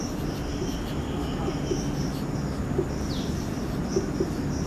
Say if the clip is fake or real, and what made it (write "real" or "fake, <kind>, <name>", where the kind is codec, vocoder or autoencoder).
real